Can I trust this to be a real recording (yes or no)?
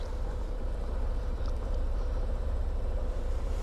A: no